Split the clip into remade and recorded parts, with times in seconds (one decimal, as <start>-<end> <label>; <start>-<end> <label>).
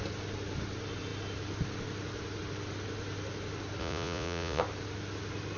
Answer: 0.0-3.8 recorded; 3.8-4.6 remade; 4.6-5.6 recorded